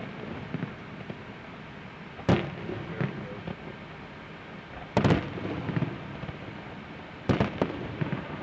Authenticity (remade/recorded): recorded